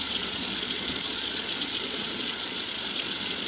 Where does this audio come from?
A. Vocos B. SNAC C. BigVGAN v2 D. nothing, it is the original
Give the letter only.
A